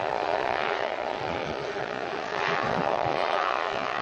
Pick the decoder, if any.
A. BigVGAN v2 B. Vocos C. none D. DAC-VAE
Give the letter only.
B